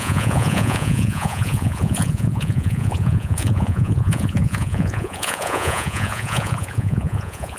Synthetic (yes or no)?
yes